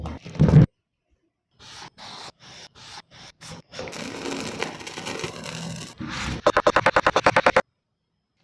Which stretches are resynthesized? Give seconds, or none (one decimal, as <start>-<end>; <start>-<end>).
2.1-3.9